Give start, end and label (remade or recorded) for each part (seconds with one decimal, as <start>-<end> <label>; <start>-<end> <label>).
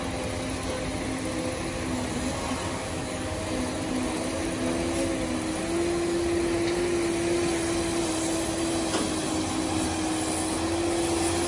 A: 0.0-2.7 recorded; 2.7-3.4 remade; 3.4-11.5 recorded